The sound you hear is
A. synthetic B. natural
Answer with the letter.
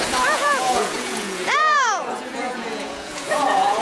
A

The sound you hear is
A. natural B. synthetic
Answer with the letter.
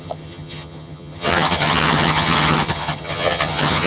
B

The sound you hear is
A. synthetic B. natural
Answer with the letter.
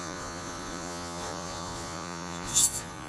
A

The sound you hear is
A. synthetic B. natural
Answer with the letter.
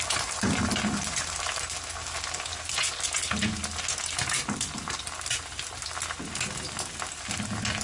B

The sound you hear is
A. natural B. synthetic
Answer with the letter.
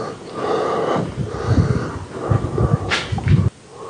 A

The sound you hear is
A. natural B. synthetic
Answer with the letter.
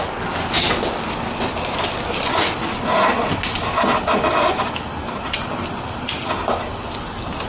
A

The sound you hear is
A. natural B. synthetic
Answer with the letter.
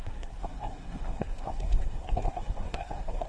B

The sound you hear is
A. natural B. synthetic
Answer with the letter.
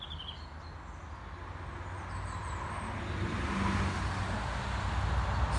A